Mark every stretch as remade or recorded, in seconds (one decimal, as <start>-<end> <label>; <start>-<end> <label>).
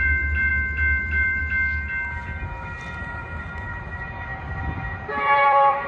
0.0-0.5 remade; 0.5-1.0 recorded; 1.0-1.4 remade; 1.4-3.0 recorded; 3.0-4.3 remade; 4.3-4.9 recorded; 4.9-5.9 remade